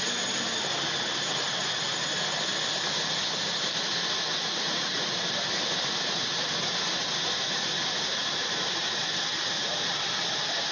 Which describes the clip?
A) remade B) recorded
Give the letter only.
B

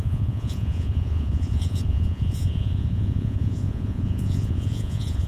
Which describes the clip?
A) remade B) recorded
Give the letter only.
A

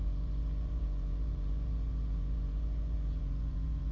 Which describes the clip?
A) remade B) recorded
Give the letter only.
A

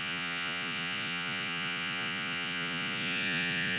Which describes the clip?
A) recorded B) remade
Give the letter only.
B